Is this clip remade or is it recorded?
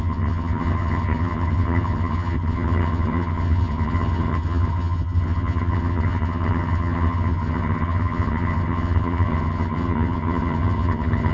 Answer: remade